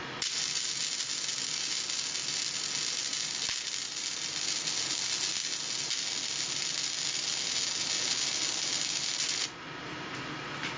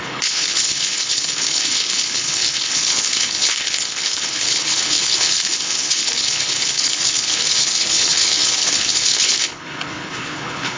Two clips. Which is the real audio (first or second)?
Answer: first